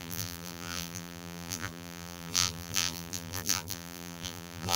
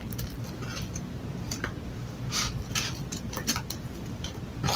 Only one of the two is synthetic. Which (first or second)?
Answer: first